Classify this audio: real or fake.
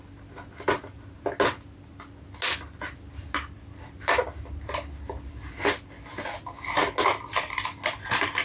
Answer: real